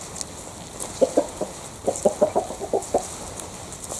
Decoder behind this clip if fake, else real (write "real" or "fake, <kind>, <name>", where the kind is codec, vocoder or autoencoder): real